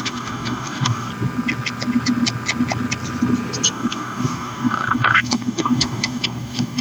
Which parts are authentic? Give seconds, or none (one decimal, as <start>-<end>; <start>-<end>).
1.1-3.7